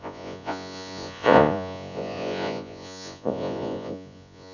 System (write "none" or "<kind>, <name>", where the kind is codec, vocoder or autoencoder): vocoder, Vocos